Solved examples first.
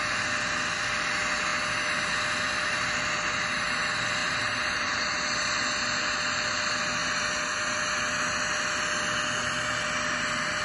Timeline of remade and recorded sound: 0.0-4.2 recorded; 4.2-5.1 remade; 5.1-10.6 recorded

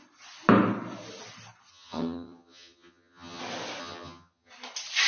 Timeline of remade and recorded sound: 0.0-1.7 recorded; 1.7-3.4 remade; 3.4-3.8 recorded; 3.8-4.5 remade; 4.5-5.1 recorded

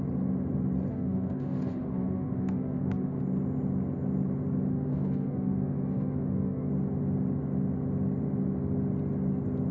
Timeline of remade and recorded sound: 0.0-0.9 recorded; 0.9-3.2 remade; 3.2-4.7 recorded; 4.7-6.7 remade; 6.7-9.7 recorded

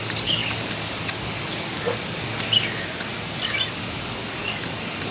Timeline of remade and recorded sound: 0.0-3.1 remade; 3.1-3.7 recorded; 3.7-5.1 remade

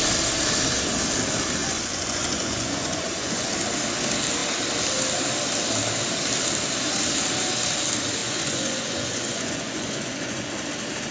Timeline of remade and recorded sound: 0.0-1.6 recorded; 1.6-3.5 remade; 3.5-8.2 recorded; 8.2-10.5 remade; 10.5-11.1 recorded

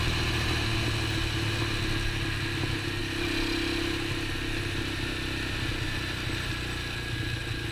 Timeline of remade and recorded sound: 0.0-7.7 recorded